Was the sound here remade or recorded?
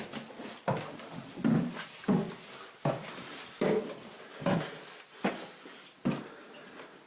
remade